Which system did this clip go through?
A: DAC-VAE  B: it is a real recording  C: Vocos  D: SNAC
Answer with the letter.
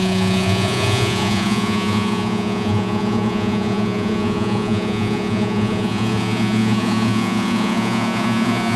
C